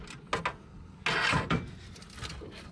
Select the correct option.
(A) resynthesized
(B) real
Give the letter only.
B